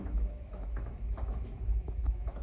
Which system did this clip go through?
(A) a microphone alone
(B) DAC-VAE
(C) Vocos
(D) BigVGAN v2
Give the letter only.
B